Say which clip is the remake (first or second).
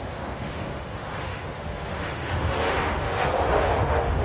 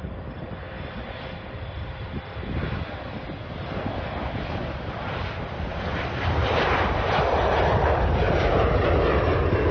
first